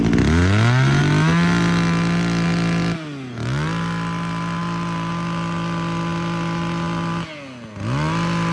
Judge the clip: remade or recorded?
recorded